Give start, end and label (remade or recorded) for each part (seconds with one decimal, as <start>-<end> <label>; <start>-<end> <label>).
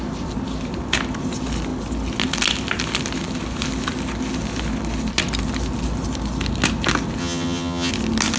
0.0-7.2 recorded; 7.2-7.9 remade; 7.9-8.4 recorded